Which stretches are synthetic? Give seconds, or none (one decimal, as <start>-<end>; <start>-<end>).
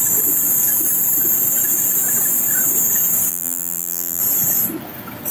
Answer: 3.3-4.2